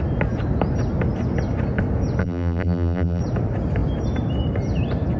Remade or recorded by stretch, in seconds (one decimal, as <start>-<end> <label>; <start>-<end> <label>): 0.0-2.2 recorded; 2.2-3.2 remade; 3.2-5.2 recorded